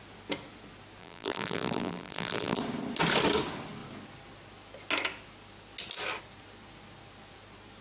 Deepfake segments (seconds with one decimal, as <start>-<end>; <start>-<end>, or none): 1.0-2.6